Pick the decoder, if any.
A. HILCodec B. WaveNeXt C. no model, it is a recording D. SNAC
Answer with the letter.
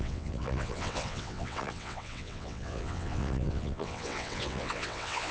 B